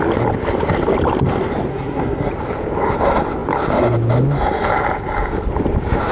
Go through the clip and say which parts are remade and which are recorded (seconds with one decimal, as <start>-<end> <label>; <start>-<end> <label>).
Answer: 0.0-1.7 recorded; 1.7-2.3 remade; 2.3-6.1 recorded